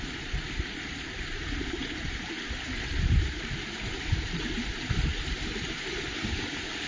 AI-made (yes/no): yes